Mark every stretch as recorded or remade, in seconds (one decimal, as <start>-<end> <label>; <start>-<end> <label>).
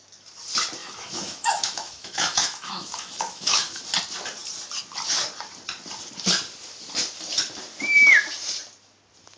0.0-0.8 recorded; 0.8-3.8 remade; 3.8-9.4 recorded